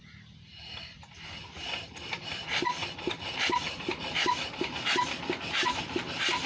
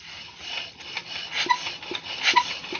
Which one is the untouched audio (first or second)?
second